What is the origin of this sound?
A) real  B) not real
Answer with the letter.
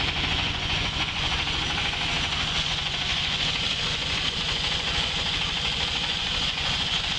B